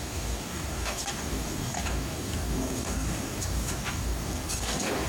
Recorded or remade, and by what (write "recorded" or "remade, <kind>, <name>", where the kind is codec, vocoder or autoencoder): remade, codec, DAC